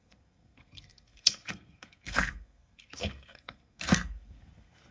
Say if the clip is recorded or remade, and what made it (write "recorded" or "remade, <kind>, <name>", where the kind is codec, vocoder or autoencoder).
remade, codec, SNAC